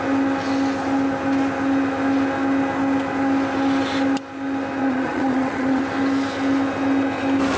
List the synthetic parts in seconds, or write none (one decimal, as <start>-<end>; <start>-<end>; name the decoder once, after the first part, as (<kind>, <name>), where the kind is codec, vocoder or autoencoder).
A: 4.8-5.8 (vocoder, Vocos)